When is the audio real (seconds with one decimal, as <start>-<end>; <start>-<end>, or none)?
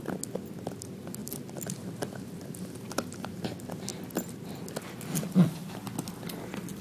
0.0-6.8